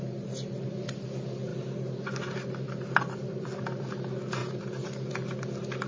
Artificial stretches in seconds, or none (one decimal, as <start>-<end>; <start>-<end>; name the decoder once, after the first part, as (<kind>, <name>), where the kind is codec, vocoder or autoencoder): none